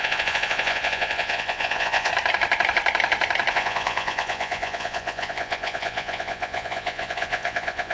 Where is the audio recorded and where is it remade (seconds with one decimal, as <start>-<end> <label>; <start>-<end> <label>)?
0.0-2.1 remade; 2.1-3.5 recorded; 3.5-7.9 remade